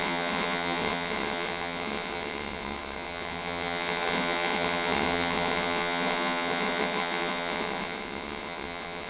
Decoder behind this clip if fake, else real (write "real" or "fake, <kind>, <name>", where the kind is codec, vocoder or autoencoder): fake, vocoder, WaveNeXt